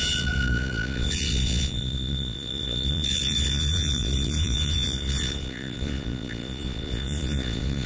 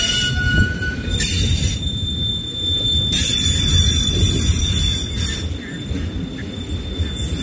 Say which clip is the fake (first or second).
first